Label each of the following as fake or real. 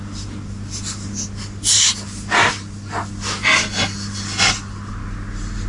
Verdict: real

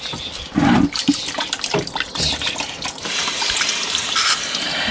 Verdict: real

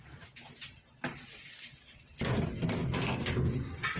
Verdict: real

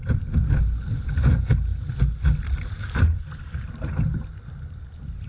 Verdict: real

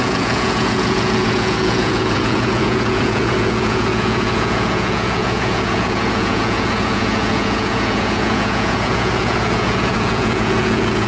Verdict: fake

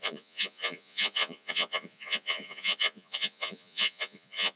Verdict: fake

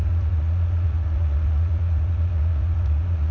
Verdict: fake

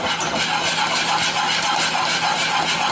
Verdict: real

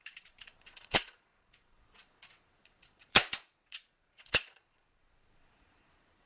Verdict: fake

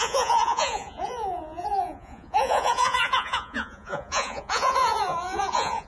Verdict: fake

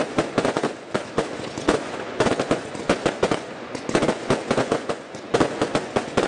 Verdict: fake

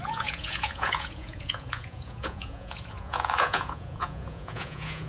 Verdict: fake